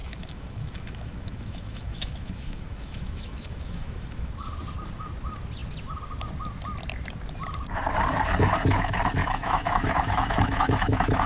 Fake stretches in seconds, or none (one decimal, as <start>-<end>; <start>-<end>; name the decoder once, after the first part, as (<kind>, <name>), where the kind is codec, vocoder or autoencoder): 0.0-4.3 (autoencoder, DAC-VAE); 9.2-11.3